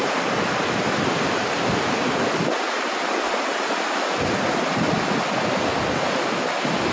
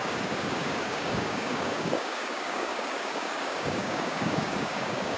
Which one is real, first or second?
first